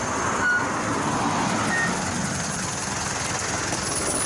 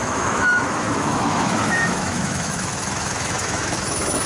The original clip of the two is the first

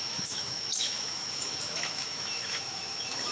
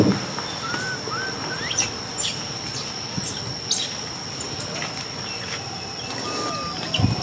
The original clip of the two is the second